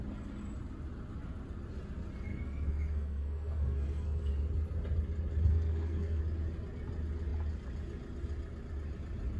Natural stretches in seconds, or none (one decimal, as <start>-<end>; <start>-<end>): 0.0-2.3; 4.3-5.5; 6.2-9.4